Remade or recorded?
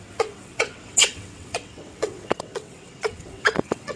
remade